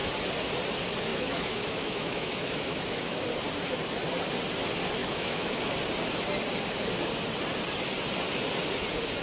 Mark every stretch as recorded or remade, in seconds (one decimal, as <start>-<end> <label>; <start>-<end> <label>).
0.0-1.1 recorded; 1.1-3.2 remade; 3.2-5.0 recorded; 5.0-5.6 remade; 5.6-9.2 recorded